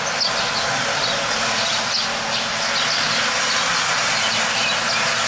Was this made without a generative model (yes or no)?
yes